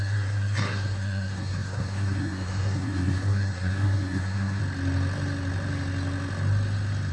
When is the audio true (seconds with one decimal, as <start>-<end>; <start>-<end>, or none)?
4.6-7.1

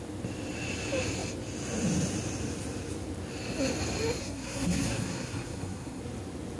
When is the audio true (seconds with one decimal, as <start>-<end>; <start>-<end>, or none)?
0.0-4.2; 6.0-6.6

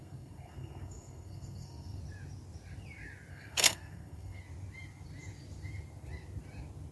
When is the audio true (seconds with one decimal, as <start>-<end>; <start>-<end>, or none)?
2.0-3.3; 4.4-6.9

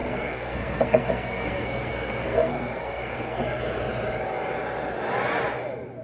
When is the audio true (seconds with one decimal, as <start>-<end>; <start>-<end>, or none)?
3.6-6.0

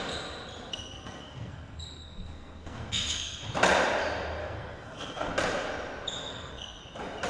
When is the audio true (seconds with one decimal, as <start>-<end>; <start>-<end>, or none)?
0.0-0.7; 3.4-4.4; 5.3-6.3; 6.8-7.3

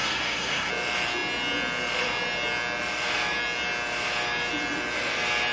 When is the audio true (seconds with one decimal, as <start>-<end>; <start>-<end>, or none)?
0.7-5.5

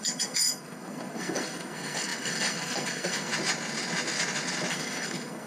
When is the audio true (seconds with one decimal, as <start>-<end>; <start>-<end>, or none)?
3.3-4.7

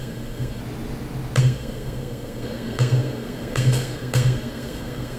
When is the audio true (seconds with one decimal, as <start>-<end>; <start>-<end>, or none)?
0.6-1.4